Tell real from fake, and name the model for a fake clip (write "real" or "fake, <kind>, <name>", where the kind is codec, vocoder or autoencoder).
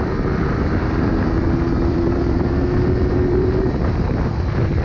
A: fake, vocoder, BigVGAN v2